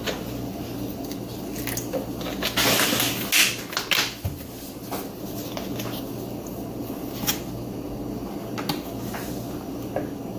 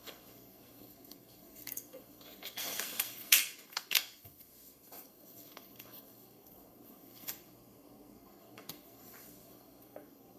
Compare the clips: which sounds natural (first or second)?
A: first